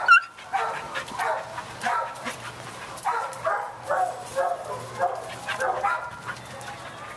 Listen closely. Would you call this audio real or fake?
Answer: real